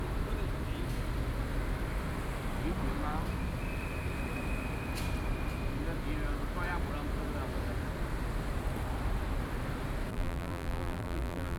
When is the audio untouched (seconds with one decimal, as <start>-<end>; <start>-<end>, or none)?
0.0-10.1